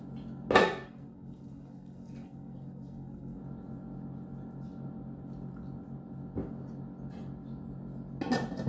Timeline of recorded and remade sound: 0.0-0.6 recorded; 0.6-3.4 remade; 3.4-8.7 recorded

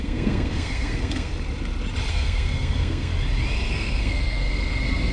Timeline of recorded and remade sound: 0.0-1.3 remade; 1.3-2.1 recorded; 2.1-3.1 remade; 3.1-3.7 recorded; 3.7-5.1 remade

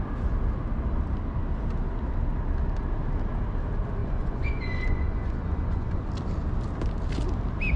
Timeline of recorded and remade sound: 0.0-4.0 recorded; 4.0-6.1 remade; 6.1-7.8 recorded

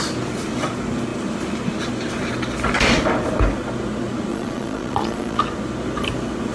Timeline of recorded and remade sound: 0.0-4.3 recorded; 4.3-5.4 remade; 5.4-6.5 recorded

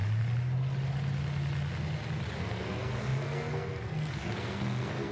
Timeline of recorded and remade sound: 0.0-2.4 recorded; 2.4-5.1 remade

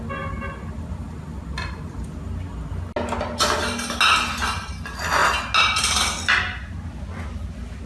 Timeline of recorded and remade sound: 0.0-7.9 recorded